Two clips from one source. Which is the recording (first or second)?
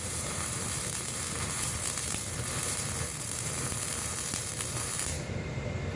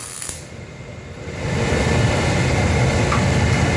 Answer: second